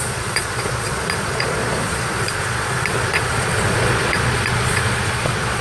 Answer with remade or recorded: remade